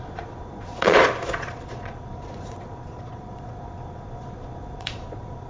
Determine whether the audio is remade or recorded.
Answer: remade